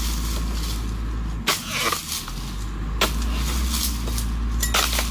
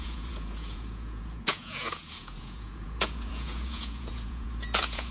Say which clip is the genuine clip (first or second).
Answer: first